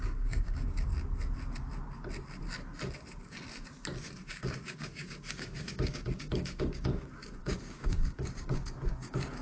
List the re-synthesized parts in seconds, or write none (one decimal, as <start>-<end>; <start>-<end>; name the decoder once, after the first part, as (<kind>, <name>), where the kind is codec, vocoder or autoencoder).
0.0-0.9 (codec, DAC); 4.3-9.4